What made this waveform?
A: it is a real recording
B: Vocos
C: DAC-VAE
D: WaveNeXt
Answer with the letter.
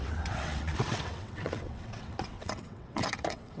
D